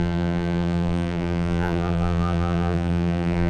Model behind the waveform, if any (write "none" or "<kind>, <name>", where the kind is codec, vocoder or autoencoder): vocoder, BigVGAN v2